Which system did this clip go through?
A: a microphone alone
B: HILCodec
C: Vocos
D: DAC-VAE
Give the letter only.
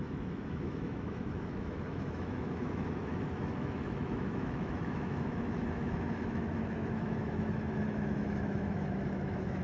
D